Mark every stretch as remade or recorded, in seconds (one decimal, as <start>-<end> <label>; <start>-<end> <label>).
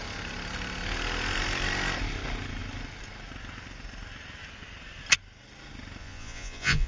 0.0-6.0 recorded; 6.0-6.9 remade